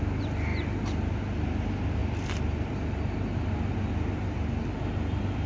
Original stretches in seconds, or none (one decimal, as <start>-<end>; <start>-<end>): 0.0-5.5